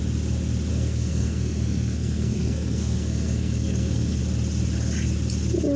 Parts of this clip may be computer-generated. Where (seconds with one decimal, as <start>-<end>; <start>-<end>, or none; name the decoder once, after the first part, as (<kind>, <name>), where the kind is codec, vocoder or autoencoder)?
0.7-4.2 (codec, SNAC)